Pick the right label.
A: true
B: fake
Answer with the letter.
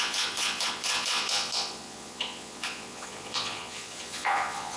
B